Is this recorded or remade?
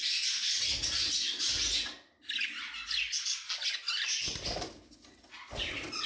recorded